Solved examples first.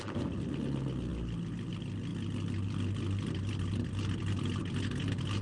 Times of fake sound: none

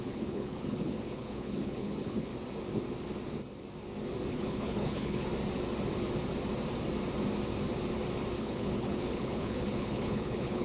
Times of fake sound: 0.0-2.3 (codec, HILCodec); 4.3-5.3; 8.4-10.6

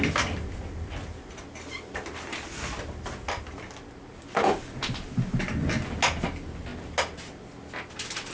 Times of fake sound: none

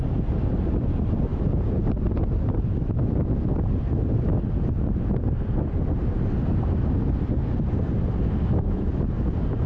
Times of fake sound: 8.4-8.9 (autoencoder, DAC-VAE)

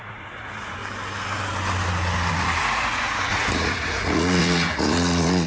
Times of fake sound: 0.0-0.8 (vocoder, Vocos); 2.3-5.5

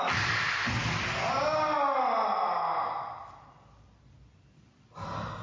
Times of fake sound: none